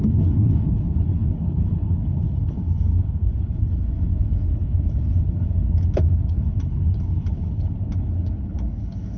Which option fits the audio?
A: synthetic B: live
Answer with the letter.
A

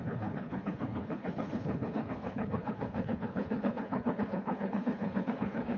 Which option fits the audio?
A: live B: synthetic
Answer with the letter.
B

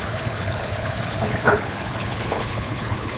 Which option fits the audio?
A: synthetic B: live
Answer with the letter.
A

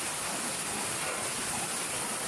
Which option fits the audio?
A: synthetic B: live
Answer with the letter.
B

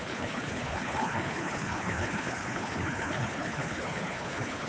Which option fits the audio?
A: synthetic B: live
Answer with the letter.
A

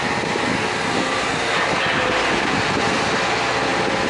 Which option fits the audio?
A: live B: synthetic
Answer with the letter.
A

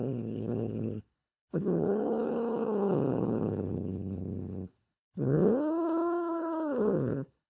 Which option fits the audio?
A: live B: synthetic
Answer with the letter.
B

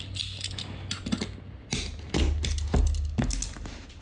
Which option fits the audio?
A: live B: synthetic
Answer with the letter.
A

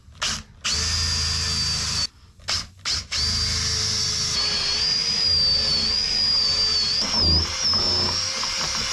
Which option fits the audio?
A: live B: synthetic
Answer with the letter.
A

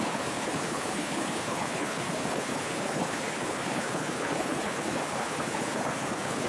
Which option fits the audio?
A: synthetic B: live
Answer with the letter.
A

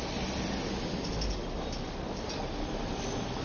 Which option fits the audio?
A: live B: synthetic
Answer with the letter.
A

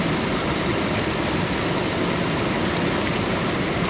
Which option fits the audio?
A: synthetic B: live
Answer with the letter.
B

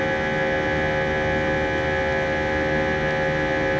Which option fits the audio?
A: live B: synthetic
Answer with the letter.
A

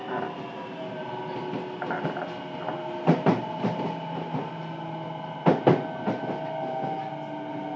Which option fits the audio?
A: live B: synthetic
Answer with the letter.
A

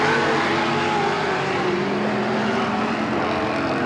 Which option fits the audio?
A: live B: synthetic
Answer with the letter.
A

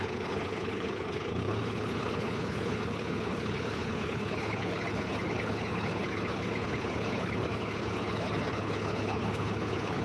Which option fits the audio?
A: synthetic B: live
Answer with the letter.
A